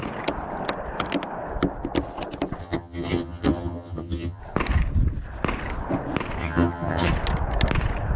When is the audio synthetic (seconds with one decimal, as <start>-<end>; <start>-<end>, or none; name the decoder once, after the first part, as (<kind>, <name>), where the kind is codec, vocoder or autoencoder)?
2.6-4.4 (vocoder, HiFi-GAN); 6.4-7.1